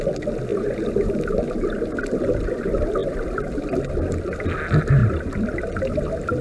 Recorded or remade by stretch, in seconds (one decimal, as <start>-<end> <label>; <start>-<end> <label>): 0.0-0.5 recorded; 0.5-1.1 remade; 1.1-5.0 recorded; 5.0-5.7 remade; 5.7-6.4 recorded